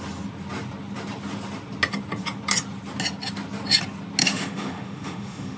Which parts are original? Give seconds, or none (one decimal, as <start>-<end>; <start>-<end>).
0.0-4.2